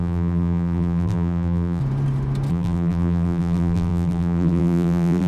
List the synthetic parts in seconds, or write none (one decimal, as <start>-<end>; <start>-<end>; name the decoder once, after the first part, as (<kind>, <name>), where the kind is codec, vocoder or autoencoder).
0.0-1.8 (vocoder, BigVGAN v2); 2.5-5.3